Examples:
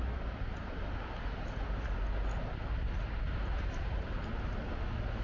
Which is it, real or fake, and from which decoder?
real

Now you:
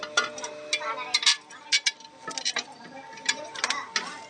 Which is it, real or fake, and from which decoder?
real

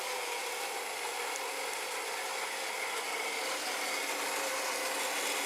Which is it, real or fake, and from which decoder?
real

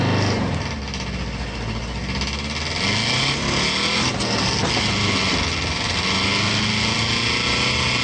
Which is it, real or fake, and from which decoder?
real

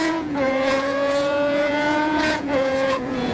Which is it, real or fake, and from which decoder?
fake, vocoder, Vocos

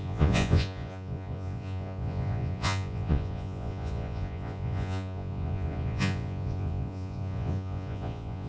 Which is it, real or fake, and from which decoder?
fake, vocoder, Vocos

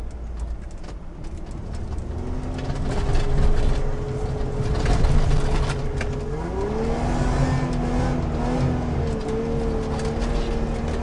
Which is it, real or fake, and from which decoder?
real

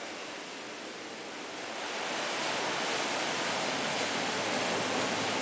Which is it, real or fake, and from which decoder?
real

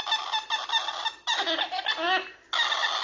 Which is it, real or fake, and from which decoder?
real